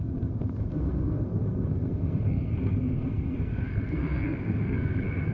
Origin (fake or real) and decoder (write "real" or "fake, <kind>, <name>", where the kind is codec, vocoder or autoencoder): fake, codec, SNAC